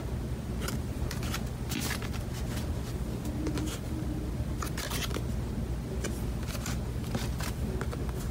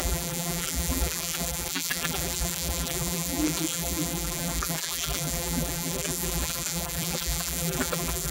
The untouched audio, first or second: first